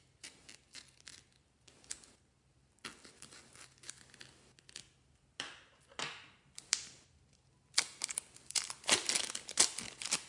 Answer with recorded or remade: recorded